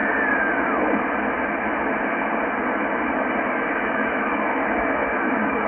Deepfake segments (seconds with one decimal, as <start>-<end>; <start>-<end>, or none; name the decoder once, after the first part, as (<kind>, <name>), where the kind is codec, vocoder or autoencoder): 3.4-5.7 (autoencoder, DAC-VAE)